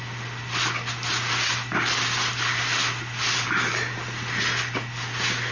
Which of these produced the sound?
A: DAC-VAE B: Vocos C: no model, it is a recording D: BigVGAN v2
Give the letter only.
C